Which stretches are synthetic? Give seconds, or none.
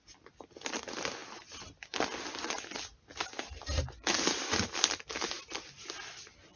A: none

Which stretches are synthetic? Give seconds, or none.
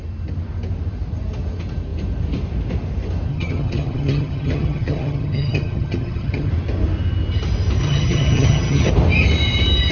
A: 3.3-6.5 (vocoder, HiFi-GAN); 7.8-8.9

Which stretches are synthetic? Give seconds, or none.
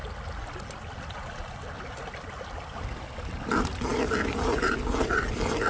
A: none